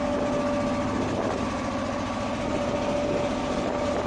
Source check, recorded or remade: recorded